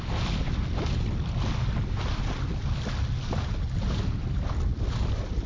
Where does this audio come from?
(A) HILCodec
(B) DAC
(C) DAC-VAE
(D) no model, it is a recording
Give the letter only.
D